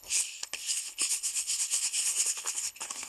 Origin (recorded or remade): remade